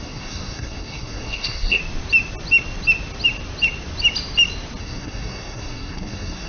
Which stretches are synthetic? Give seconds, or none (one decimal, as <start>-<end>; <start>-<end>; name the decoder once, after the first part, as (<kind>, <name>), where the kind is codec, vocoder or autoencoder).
0.0-1.8 (codec, SNAC); 4.8-6.5